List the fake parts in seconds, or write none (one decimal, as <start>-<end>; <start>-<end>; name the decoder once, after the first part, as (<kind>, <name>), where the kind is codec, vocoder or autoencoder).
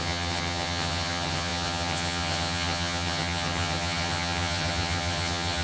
0.0-5.6 (vocoder, HiFi-GAN)